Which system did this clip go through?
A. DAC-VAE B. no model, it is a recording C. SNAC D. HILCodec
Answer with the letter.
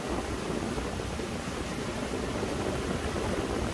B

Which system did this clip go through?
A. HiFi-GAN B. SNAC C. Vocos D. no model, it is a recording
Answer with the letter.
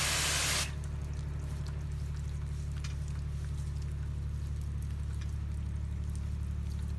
D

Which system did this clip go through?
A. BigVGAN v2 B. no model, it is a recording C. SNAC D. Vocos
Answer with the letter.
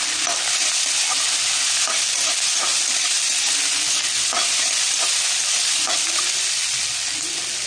B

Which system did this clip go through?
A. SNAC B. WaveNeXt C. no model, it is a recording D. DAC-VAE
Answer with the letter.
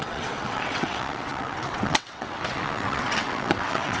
B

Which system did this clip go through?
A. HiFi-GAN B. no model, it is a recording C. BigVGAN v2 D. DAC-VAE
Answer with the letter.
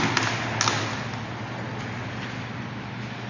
B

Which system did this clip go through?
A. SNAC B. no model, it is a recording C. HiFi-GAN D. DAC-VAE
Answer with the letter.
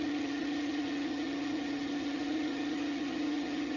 C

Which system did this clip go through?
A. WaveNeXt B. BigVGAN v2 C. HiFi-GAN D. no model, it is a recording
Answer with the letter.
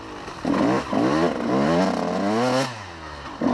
D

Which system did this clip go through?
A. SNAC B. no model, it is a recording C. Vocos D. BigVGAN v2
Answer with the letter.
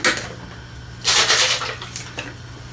B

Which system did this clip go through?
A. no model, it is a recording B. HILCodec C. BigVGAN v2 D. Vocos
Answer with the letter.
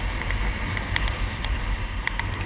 C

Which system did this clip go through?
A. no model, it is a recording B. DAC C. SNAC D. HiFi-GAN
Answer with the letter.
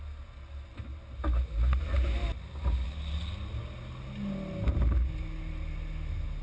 A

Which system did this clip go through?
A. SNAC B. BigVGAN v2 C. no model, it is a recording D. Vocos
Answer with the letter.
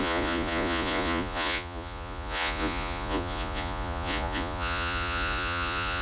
D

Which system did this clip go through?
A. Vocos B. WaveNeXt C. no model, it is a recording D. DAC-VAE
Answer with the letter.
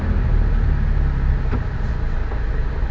C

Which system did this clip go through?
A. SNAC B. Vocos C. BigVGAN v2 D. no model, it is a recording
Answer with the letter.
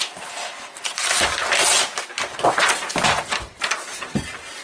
D